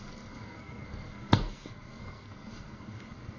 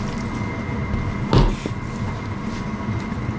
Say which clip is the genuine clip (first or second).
second